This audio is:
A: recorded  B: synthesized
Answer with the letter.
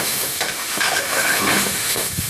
B